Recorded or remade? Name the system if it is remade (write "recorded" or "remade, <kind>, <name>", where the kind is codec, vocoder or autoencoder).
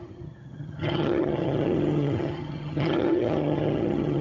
remade, vocoder, HiFi-GAN